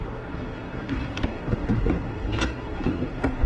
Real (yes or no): no